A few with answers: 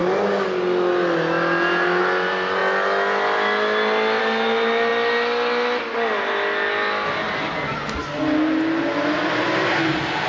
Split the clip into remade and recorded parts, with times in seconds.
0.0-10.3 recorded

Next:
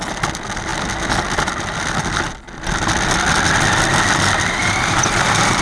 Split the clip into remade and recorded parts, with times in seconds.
0.0-4.6 recorded; 4.6-5.6 remade

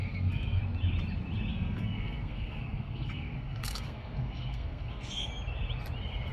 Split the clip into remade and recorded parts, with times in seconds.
0.0-0.6 remade; 0.6-1.5 recorded; 1.5-5.3 remade; 5.3-6.3 recorded

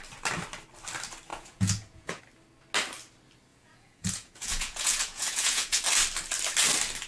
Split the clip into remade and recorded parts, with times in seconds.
0.0-1.3 recorded; 1.3-2.2 remade; 2.2-3.5 recorded; 3.5-5.8 remade; 5.8-7.1 recorded

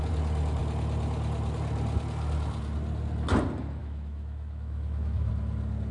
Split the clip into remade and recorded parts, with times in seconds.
0.0-3.8 recorded; 3.8-5.3 remade; 5.3-5.9 recorded